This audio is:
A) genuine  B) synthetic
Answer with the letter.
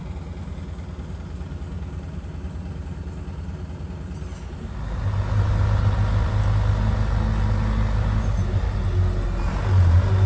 A